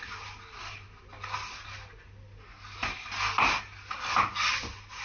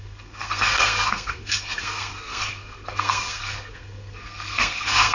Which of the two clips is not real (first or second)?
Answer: second